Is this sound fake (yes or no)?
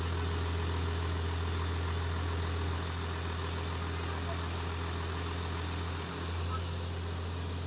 no